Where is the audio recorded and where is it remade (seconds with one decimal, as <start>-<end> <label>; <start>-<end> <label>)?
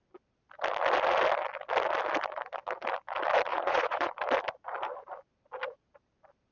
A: 0.0-3.5 recorded; 3.5-4.1 remade; 4.1-6.5 recorded